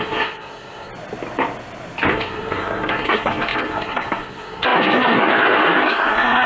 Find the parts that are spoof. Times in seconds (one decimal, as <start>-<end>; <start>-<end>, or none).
0.0-0.9; 2.1-6.5